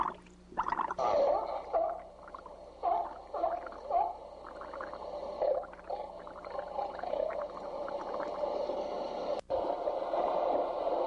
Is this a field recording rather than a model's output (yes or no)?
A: yes